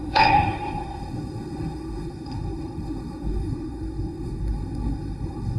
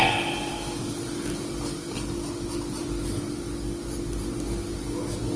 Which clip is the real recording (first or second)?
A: second